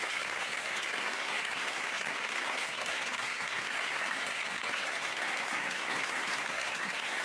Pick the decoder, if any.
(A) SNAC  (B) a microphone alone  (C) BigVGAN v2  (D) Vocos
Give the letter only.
A